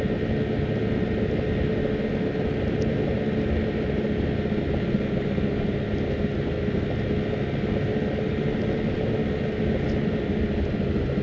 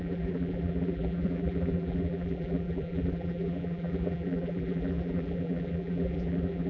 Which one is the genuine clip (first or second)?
first